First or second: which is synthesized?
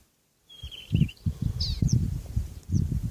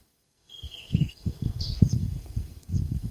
second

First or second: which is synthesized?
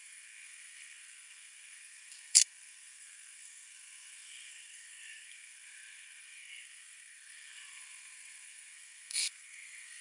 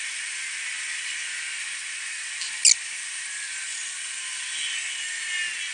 first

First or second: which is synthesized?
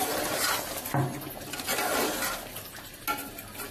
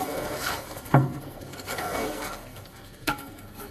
second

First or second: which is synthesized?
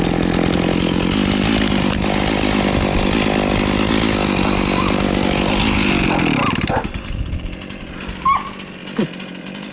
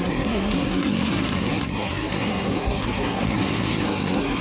second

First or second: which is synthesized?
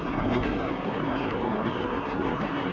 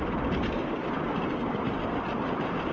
first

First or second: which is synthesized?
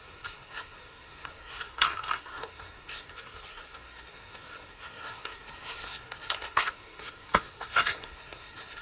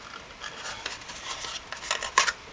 first